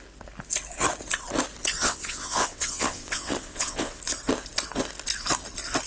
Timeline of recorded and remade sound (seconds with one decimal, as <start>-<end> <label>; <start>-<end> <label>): 0.0-1.8 recorded; 1.8-4.0 remade; 4.0-5.9 recorded